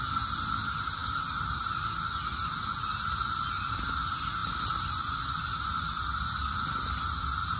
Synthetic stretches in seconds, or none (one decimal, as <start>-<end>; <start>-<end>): none